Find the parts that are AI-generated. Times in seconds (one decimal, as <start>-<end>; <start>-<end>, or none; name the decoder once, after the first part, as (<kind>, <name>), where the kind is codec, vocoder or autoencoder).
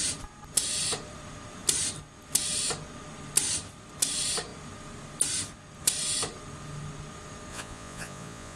7.5-8.6 (vocoder, Vocos)